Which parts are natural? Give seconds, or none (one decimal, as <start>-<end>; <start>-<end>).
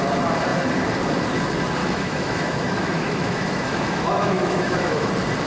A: 0.0-1.8; 5.1-5.5